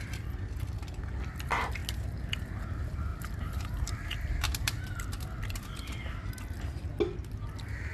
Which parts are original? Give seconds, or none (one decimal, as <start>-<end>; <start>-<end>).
0.0-3.1; 6.3-7.9